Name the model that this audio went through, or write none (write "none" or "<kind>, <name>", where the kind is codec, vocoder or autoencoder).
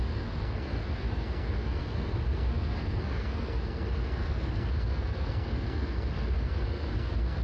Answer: codec, SNAC